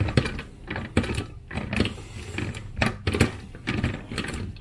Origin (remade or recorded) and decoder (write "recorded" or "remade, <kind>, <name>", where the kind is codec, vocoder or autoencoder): recorded